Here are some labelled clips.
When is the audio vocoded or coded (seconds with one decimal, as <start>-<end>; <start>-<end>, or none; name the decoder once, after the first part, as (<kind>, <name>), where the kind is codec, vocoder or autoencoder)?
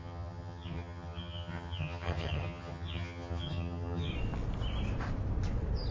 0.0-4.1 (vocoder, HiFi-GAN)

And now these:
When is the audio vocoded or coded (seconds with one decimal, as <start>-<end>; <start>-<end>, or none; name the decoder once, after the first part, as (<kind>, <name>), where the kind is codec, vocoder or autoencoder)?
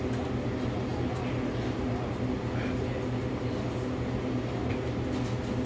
none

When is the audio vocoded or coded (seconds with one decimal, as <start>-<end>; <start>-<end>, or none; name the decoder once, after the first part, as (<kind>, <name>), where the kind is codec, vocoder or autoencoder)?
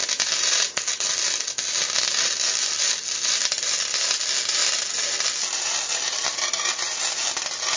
none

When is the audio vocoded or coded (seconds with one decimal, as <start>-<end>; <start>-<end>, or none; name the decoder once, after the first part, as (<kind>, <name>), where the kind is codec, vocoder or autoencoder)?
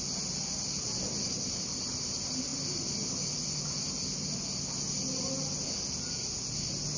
none